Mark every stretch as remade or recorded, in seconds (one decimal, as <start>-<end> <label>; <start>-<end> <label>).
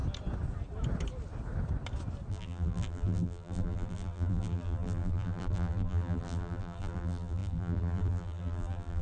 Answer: 0.0-2.3 recorded; 2.3-9.0 remade